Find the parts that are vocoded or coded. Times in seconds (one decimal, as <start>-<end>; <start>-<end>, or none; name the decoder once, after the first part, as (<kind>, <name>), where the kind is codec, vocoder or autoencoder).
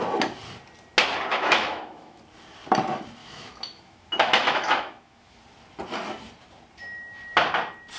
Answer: 1.3-2.2 (autoencoder, DAC-VAE); 3.2-5.4